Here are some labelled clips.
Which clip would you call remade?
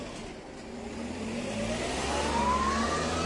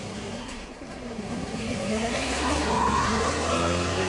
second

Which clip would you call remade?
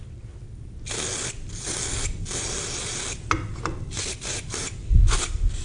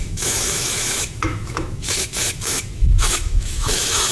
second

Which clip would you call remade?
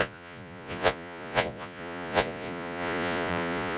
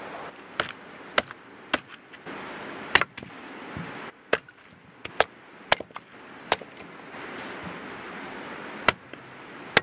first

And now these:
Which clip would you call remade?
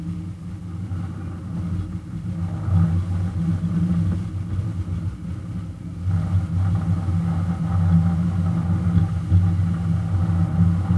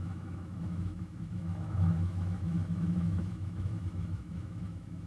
second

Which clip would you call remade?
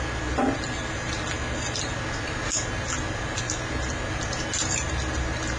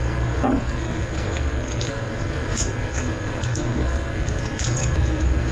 second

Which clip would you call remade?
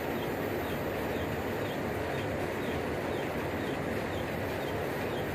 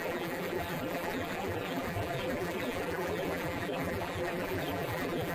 second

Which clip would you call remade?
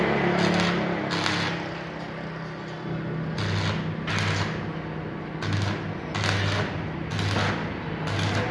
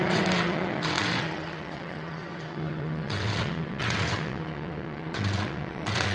second